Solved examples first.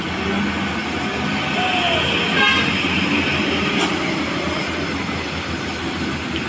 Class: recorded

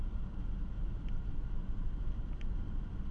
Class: recorded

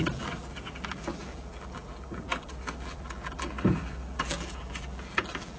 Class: remade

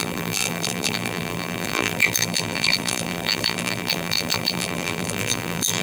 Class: remade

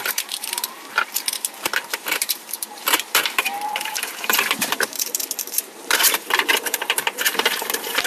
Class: remade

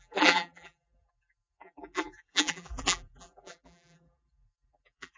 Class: remade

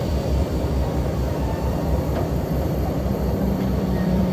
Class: remade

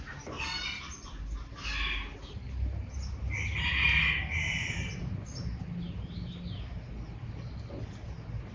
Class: recorded